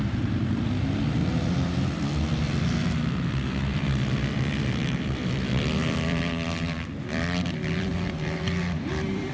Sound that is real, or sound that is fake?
fake